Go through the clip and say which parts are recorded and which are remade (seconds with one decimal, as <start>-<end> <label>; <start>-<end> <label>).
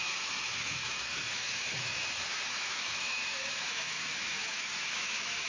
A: 0.0-5.5 remade